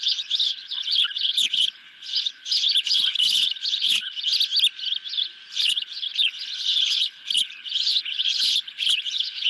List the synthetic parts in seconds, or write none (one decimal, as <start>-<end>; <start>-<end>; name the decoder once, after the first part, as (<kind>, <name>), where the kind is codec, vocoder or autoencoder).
0.0-4.3 (codec, HILCodec); 5.5-9.5